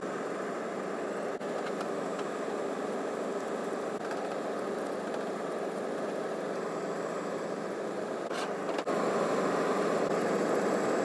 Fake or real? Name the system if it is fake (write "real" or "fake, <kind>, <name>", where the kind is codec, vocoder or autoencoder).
real